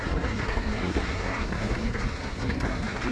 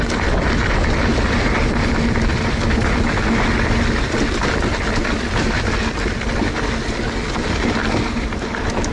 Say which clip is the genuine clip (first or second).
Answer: second